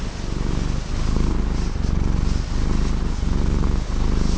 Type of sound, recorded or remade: recorded